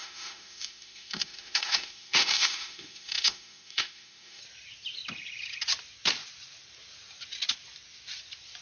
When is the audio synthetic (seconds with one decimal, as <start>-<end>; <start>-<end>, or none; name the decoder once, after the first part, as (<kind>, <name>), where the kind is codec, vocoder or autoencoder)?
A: 0.0-4.4 (autoencoder, DAC-VAE)